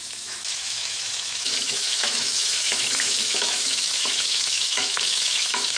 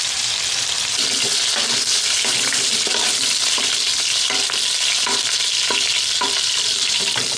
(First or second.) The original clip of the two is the second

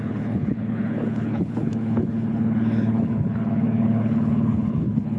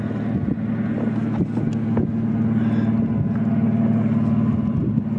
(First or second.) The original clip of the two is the second